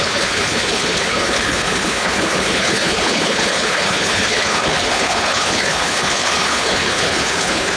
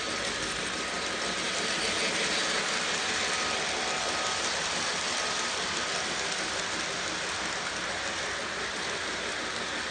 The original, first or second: second